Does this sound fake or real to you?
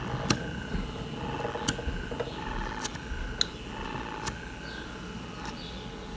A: real